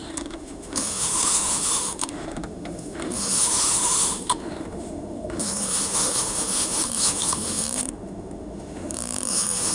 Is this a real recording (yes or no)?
no